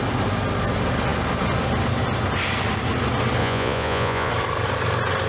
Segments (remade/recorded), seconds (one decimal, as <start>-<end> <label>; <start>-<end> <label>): 0.0-3.4 recorded; 3.4-4.3 remade; 4.3-5.3 recorded